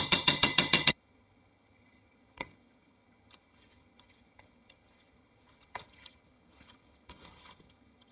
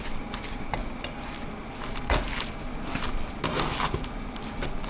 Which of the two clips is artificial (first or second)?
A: first